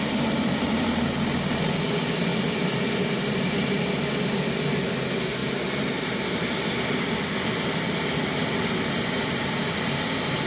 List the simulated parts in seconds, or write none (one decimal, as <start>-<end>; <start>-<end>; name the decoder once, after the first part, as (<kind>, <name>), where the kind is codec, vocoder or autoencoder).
none